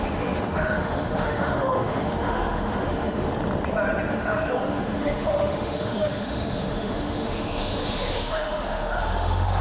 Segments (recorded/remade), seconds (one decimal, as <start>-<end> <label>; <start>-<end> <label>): 0.0-3.3 remade; 3.3-4.1 recorded; 4.1-9.6 remade